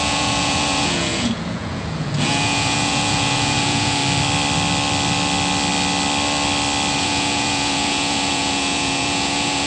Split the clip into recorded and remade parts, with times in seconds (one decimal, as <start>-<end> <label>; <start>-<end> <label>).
0.0-4.0 remade; 4.0-6.9 recorded; 6.9-9.7 remade

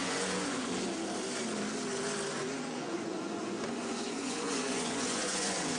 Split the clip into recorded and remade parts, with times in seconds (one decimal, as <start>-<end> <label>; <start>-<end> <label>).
0.0-0.7 remade; 0.7-2.4 recorded; 2.4-5.8 remade

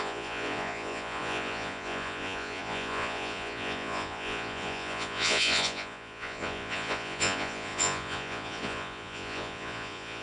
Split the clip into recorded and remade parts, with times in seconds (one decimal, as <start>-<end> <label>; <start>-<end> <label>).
0.0-10.2 remade

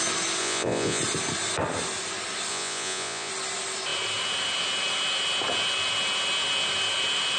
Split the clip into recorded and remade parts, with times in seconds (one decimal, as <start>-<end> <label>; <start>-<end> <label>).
0.0-0.4 recorded; 0.4-1.0 remade; 1.0-2.5 recorded; 2.5-3.3 remade; 3.3-7.4 recorded

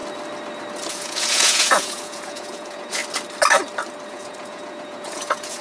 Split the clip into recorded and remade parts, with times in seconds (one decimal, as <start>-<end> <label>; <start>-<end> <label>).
0.0-0.9 recorded; 0.9-3.0 remade; 3.0-4.1 recorded; 4.1-5.6 remade

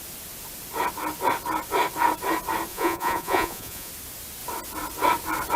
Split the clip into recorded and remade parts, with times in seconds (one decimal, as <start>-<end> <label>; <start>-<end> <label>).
0.0-2.7 recorded; 2.7-3.9 remade; 3.9-5.6 recorded